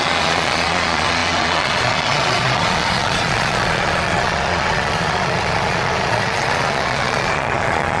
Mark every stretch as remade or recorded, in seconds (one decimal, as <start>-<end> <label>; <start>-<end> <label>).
0.0-8.0 remade